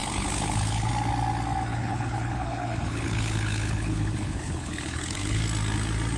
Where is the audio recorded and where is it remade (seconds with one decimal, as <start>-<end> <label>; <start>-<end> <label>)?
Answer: 0.0-0.9 remade; 0.9-1.7 recorded; 1.7-5.4 remade; 5.4-6.2 recorded